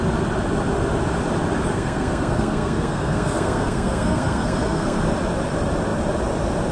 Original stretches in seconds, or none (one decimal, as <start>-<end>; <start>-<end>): 0.0-1.7; 5.0-6.7